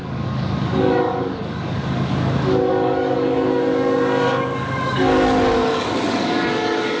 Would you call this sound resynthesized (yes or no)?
yes